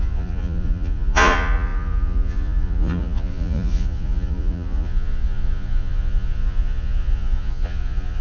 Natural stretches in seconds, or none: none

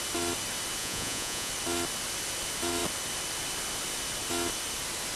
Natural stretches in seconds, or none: 0.0-0.8; 1.5-5.2